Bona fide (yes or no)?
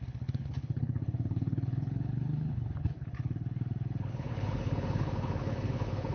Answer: no